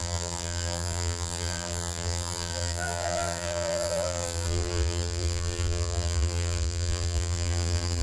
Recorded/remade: remade